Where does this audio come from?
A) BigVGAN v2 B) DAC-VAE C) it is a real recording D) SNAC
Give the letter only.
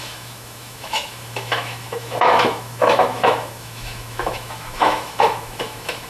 B